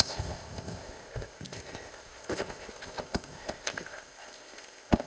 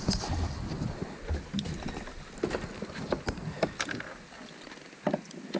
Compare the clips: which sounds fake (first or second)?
first